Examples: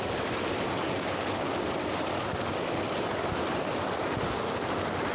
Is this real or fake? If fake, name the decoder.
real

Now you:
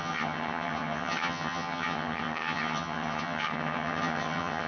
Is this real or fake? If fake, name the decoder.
fake, vocoder, HiFi-GAN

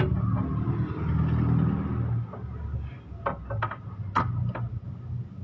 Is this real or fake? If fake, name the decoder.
real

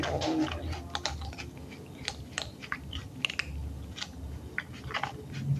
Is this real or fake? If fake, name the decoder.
real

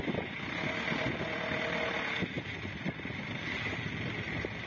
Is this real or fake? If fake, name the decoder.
real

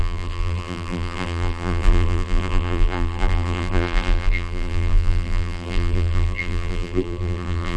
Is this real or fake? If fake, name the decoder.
fake, vocoder, BigVGAN v2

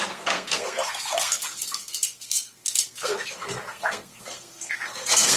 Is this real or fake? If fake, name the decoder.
fake, codec, SNAC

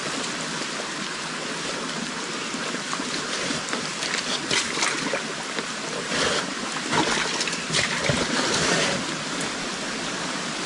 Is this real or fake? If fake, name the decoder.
real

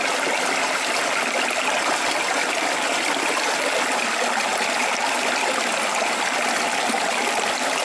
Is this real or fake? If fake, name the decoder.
real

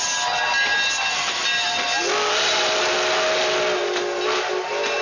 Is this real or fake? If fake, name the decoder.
real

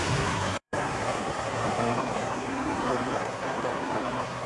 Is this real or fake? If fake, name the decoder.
fake, codec, SNAC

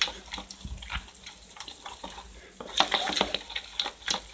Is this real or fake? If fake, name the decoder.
real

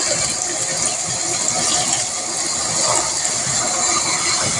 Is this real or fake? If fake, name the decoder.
real